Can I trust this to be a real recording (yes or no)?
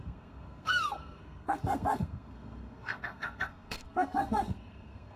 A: no